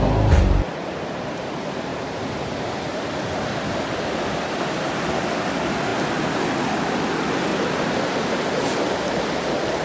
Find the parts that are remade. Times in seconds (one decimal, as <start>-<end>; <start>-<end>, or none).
1.9-3.7; 7.5-8.0